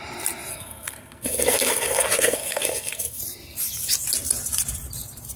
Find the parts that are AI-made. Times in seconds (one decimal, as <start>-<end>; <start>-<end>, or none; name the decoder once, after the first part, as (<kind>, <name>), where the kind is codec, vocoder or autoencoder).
0.5-3.2 (codec, SNAC)